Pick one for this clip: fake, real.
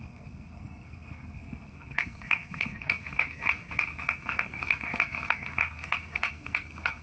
fake